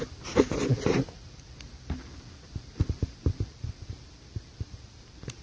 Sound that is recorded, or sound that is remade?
remade